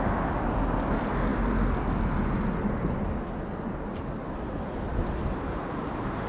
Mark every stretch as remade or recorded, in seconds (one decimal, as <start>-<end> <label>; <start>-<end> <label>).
0.0-6.3 recorded